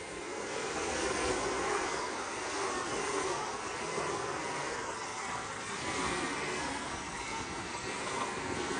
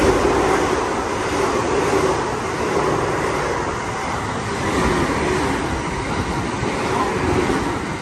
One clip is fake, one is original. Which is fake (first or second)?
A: first